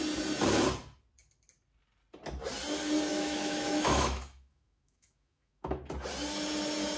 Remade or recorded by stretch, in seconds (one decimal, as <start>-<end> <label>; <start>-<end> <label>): 0.0-3.1 recorded; 3.1-5.8 remade; 5.8-7.0 recorded